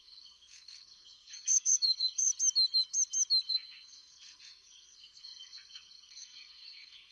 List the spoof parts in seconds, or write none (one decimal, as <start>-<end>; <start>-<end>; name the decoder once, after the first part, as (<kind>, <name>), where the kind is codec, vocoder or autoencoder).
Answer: 0.0-2.3 (codec, SNAC); 3.5-7.1